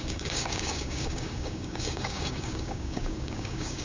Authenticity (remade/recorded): remade